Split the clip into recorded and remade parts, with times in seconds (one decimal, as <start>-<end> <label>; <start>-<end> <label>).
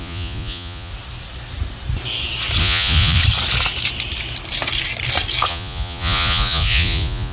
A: 0.0-0.9 remade; 0.9-2.6 recorded; 2.6-3.2 remade; 3.2-5.5 recorded; 5.5-7.3 remade